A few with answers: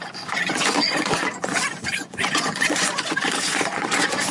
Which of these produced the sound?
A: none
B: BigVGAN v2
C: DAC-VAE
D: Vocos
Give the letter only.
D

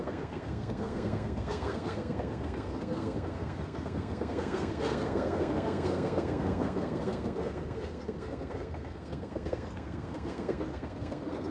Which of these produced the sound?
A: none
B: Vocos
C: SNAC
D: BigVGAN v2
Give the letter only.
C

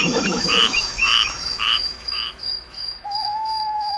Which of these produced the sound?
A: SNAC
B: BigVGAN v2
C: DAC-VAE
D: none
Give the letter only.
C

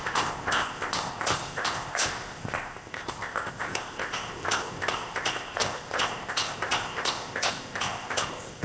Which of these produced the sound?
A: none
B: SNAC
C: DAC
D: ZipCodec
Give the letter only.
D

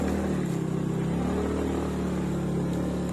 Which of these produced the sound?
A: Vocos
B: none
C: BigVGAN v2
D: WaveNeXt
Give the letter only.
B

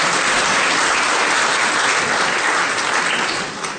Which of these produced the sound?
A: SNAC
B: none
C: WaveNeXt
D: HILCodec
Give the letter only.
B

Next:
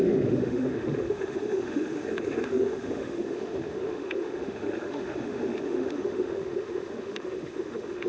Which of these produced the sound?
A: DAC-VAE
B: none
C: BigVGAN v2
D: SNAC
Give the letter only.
A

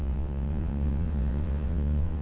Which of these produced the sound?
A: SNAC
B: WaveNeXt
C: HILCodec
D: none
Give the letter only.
B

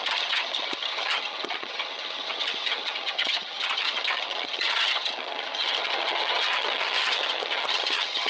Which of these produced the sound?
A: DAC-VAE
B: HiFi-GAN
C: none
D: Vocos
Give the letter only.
B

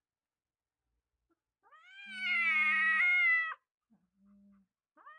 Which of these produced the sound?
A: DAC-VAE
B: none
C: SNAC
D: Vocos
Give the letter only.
B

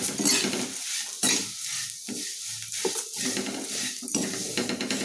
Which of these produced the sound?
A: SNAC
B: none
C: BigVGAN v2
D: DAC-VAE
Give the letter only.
B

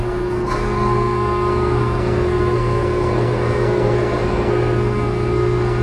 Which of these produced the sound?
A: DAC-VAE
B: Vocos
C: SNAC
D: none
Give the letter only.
C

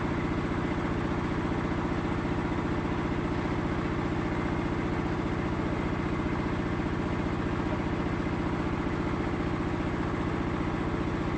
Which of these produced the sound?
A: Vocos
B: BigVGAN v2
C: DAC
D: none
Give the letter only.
D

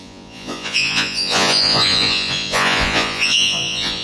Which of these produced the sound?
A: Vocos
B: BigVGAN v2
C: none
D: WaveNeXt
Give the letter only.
A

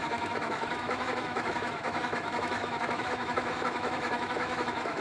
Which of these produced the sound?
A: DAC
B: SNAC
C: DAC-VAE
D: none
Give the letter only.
C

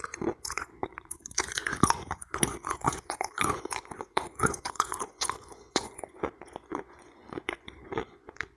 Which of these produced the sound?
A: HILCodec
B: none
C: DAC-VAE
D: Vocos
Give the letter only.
D